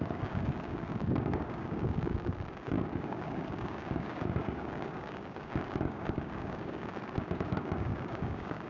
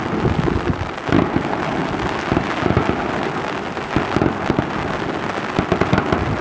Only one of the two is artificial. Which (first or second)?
first